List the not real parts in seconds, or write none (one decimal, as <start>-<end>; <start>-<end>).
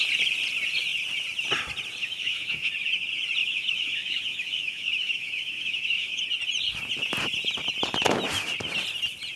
2.0-2.7; 3.4-6.2